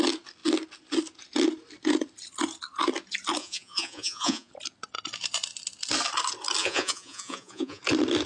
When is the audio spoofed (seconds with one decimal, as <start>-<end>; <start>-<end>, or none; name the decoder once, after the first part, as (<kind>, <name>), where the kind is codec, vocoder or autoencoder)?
3.4-4.5 (vocoder, Vocos); 6.6-7.8